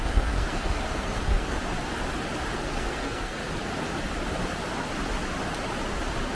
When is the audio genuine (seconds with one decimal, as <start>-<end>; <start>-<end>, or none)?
1.6-2.5; 3.4-6.4